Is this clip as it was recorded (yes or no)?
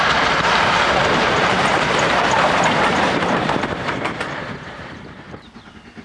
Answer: no